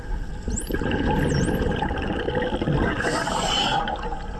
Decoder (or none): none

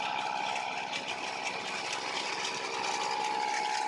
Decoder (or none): none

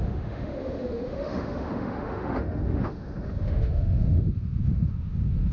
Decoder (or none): autoencoder, DAC-VAE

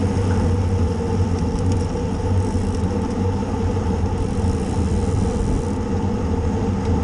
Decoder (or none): none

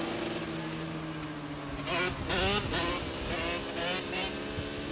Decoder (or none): none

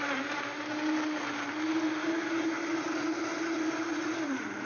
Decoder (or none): none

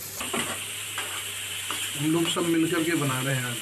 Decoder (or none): vocoder, BigVGAN v2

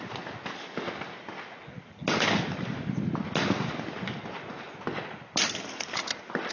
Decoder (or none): none